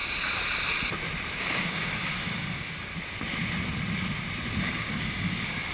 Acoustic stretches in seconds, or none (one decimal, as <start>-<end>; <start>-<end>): 0.0-1.4; 2.9-4.6